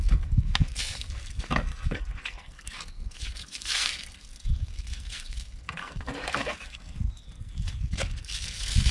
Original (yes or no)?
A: no